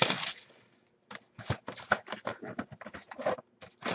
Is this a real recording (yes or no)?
yes